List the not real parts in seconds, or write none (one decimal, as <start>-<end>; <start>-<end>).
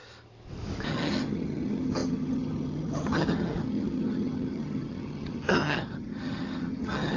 0.9-7.2